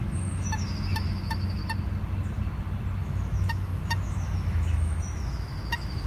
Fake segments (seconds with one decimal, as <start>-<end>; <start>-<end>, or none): 0.0-1.6; 3.0-6.1